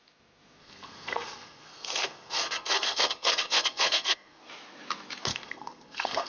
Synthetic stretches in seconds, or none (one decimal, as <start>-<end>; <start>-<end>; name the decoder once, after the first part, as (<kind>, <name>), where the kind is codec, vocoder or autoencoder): 0.6-4.4 (codec, SNAC); 5.3-6.3